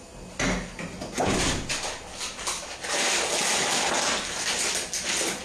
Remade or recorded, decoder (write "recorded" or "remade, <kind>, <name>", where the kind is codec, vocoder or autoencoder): recorded